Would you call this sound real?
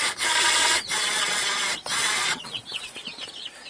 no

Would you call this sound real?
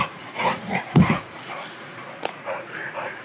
no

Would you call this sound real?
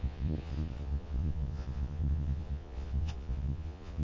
no